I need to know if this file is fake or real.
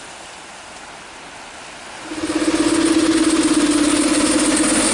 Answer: real